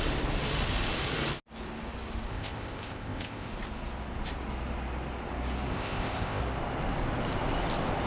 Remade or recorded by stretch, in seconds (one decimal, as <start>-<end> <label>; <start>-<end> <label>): 0.0-2.3 recorded; 2.3-3.5 remade; 3.5-5.7 recorded; 5.7-6.4 remade; 6.4-8.1 recorded